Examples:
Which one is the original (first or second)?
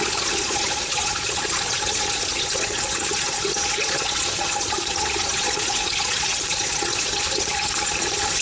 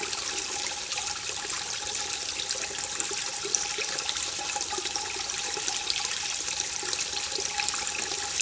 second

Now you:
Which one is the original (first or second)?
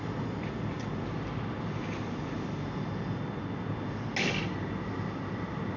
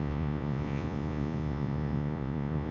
first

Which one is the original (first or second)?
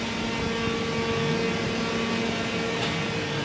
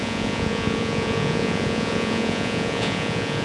first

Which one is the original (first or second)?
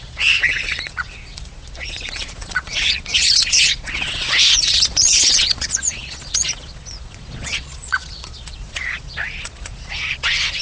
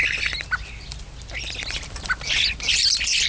second